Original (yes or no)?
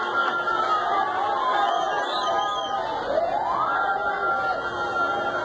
yes